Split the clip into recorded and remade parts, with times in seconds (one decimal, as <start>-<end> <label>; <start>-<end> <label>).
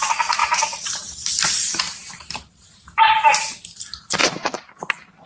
0.0-0.4 recorded; 0.4-3.6 remade; 3.6-5.3 recorded